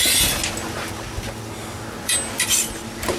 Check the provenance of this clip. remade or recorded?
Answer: recorded